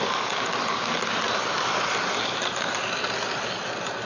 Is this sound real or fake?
real